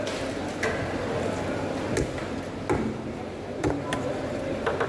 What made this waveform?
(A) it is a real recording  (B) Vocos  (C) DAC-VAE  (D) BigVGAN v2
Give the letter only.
A